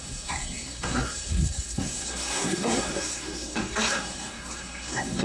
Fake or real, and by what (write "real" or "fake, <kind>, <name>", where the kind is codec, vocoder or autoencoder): fake, codec, SNAC